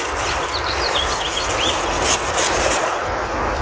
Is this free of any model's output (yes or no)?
yes